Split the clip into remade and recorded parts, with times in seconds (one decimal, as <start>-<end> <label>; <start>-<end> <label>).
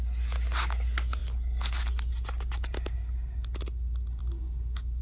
0.0-5.0 recorded